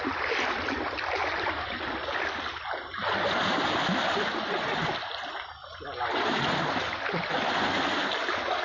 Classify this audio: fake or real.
real